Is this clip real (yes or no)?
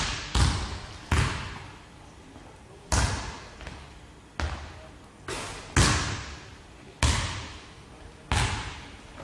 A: yes